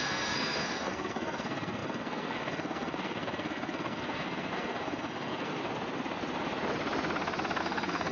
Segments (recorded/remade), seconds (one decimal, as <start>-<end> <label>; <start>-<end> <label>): 0.0-5.6 remade; 5.6-7.6 recorded; 7.6-8.1 remade